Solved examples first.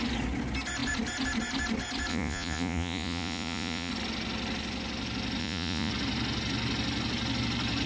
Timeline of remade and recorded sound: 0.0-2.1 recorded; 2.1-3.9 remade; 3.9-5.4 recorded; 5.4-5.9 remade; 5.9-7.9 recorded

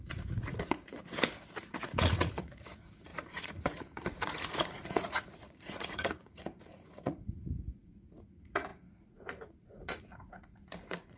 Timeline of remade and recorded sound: 0.0-1.0 remade; 1.0-1.7 recorded; 1.7-11.2 remade